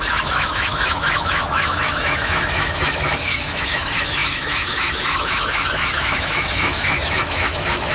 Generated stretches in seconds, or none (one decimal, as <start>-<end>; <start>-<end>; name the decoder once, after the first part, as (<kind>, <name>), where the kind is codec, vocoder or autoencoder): 0.0-7.9 (autoencoder, DAC-VAE)